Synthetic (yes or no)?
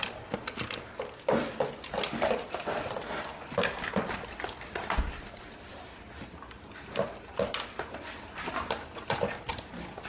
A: no